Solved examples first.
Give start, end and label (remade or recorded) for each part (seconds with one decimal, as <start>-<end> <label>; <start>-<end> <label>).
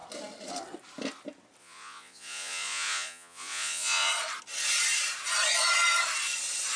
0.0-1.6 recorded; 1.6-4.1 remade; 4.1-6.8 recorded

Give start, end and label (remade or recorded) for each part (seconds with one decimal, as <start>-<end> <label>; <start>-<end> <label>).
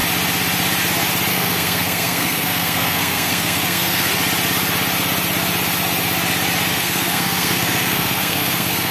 0.0-1.3 recorded; 1.3-4.1 remade; 4.1-6.7 recorded; 6.7-8.9 remade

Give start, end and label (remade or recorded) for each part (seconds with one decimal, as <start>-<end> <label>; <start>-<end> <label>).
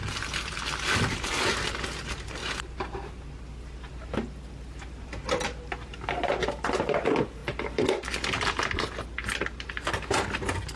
0.0-7.4 remade; 7.4-10.1 recorded; 10.1-10.8 remade